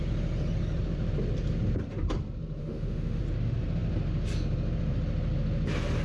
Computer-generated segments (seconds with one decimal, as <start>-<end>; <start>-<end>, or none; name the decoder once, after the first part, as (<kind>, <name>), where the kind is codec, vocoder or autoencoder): 2.6-3.2 (autoencoder, DAC-VAE)